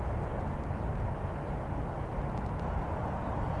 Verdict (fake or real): real